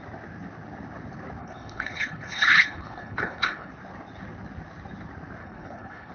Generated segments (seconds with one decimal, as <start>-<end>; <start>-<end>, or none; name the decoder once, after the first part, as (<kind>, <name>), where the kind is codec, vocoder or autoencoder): 1.4-3.7 (codec, HILCodec); 5.4-6.1